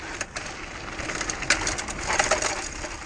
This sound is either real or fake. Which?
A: real